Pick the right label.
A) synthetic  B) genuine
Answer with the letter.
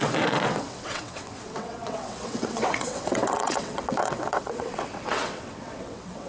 A